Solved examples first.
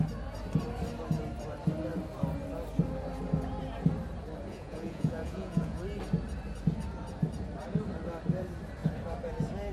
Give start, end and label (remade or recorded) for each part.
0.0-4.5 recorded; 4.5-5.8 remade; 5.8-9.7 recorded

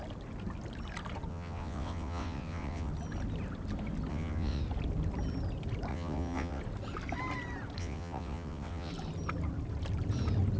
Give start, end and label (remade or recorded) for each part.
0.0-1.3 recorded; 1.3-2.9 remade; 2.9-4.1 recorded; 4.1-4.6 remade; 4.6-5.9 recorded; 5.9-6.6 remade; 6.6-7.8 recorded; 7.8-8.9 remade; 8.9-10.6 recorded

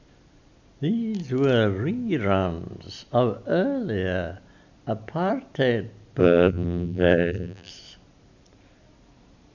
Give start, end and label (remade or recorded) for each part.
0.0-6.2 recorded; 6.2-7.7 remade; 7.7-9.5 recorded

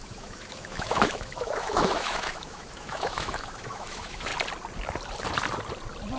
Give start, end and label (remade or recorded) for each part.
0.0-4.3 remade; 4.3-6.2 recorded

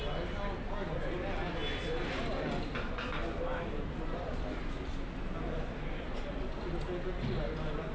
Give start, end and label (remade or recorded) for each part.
0.0-7.9 recorded

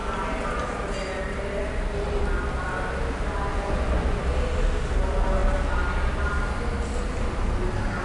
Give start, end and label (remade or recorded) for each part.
0.0-3.5 recorded; 3.5-4.2 remade; 4.2-8.0 recorded

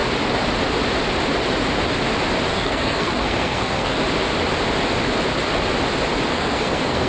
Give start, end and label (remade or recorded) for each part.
0.0-2.5 recorded; 2.5-4.0 remade; 4.0-6.3 recorded; 6.3-7.1 remade

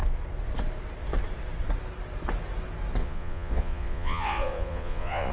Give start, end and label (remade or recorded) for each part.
0.0-3.0 recorded; 3.0-5.3 remade